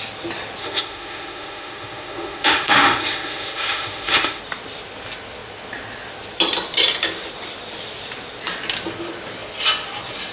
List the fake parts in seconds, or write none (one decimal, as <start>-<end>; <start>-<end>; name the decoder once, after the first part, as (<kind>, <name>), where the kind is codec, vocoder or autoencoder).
0.6-4.4 (autoencoder, DAC-VAE)